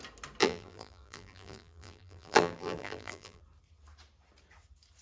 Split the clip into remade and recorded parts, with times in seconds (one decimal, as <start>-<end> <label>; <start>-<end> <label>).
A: 0.0-0.4 recorded; 0.4-3.4 remade; 3.4-5.0 recorded